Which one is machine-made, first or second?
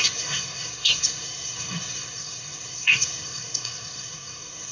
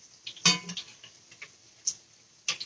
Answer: first